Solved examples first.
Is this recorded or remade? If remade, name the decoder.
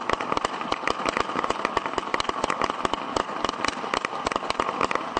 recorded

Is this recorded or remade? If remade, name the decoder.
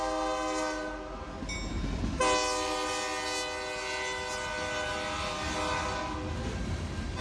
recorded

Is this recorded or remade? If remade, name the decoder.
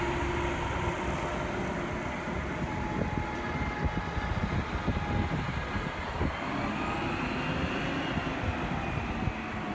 recorded